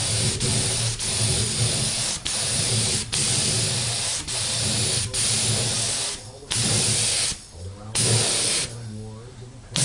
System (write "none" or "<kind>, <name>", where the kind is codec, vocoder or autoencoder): none